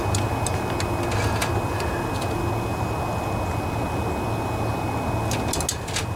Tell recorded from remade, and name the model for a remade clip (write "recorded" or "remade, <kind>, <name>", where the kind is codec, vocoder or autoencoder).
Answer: recorded